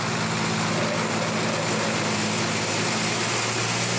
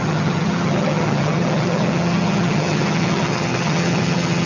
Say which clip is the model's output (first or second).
second